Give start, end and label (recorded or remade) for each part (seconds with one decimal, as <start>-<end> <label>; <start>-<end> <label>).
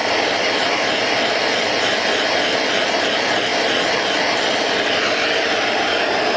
0.0-6.4 recorded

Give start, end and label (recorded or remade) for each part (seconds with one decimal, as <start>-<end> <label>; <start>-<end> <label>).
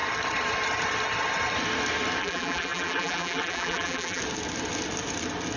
0.0-2.2 recorded; 2.2-4.2 remade; 4.2-5.6 recorded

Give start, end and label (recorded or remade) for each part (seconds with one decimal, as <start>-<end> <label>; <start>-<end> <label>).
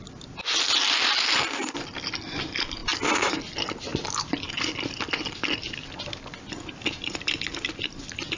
0.0-2.8 remade; 2.8-3.3 recorded; 3.3-8.4 remade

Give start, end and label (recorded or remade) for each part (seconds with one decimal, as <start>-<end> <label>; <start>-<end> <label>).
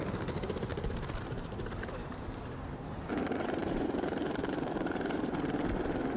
0.0-0.7 recorded; 0.7-3.1 remade; 3.1-3.6 recorded; 3.6-5.2 remade; 5.2-6.2 recorded